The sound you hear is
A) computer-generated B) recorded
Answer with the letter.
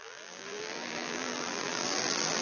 A